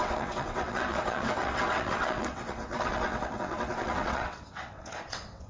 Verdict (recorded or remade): remade